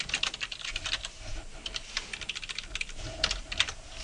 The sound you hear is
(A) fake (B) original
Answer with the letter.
B